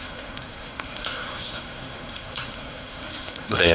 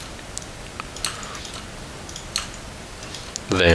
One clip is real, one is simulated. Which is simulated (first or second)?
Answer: first